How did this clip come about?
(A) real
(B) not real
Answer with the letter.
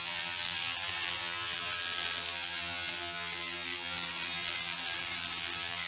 B